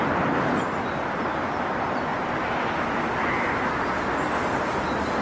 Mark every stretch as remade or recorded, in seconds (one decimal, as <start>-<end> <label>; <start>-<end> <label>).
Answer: 0.0-5.2 recorded